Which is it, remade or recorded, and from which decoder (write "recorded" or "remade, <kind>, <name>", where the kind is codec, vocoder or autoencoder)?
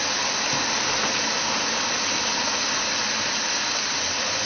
recorded